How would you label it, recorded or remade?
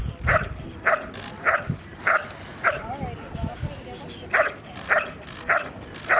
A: recorded